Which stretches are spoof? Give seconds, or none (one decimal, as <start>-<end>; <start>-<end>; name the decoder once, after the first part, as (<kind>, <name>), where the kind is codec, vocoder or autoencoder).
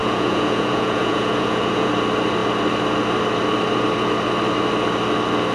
0.0-1.9 (vocoder, Vocos)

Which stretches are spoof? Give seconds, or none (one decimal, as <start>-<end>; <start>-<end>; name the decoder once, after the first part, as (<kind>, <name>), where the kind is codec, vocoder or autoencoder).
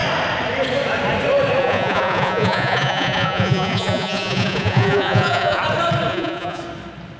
1.6-5.6 (vocoder, Vocos); 6.1-6.6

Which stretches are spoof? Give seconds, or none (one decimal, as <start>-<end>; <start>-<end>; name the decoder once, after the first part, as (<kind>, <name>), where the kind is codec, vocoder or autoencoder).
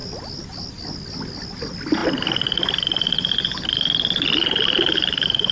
none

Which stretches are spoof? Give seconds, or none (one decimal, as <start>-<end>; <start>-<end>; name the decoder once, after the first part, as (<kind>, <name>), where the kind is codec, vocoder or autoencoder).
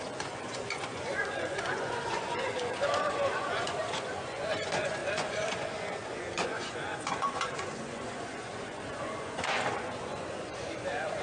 0.0-11.2 (vocoder, Vocos)